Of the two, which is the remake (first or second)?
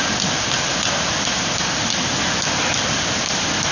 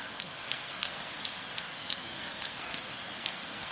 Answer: second